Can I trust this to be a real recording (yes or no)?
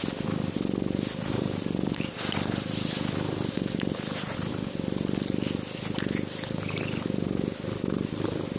yes